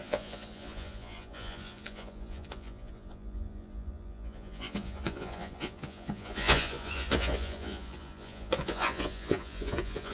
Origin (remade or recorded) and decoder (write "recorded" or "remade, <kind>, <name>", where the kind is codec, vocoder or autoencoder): remade, vocoder, Vocos